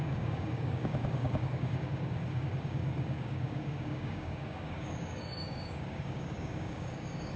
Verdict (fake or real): fake